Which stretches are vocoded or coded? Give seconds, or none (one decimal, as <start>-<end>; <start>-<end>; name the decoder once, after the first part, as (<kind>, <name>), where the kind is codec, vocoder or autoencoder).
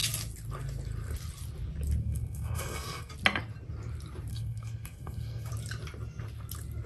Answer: 2.0-3.1 (codec, SNAC); 4.3-5.5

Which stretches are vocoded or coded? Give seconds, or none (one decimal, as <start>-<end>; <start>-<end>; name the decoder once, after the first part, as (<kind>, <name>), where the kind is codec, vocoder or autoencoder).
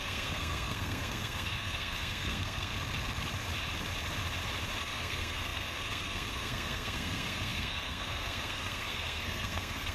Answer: 0.0-2.7 (codec, SNAC); 4.8-9.9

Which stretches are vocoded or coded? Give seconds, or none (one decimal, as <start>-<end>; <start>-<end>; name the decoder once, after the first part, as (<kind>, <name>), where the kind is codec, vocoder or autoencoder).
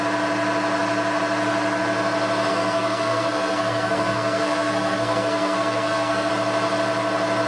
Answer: 2.5-6.3 (codec, SNAC)